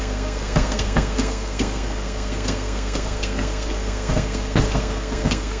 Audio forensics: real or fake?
fake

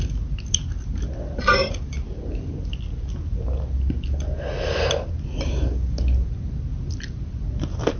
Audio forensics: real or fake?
real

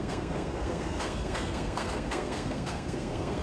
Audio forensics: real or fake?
fake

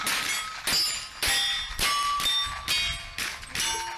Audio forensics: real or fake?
real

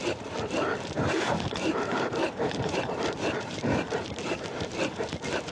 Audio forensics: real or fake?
fake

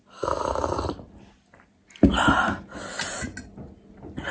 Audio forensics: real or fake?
real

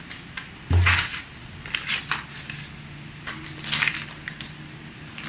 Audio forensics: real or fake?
real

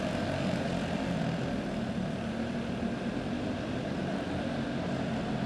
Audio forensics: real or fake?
real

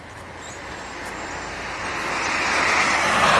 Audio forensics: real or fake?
real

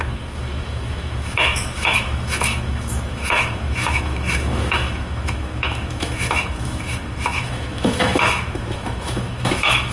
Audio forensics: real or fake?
fake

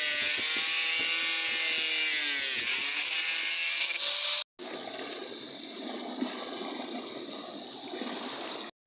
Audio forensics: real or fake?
real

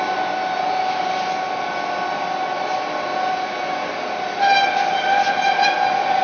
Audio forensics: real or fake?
real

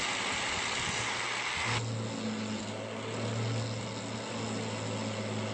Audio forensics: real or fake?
real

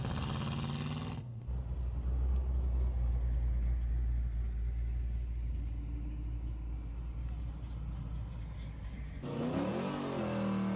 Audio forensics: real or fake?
real